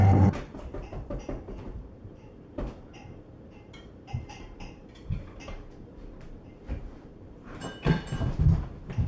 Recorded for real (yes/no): no